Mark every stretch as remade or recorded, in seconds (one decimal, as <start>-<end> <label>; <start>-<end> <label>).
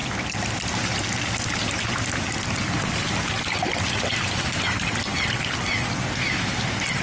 0.0-7.0 recorded